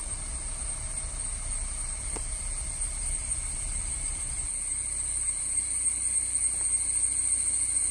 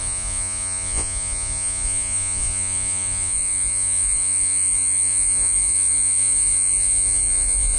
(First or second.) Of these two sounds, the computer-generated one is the second